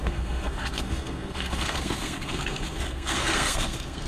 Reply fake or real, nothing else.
fake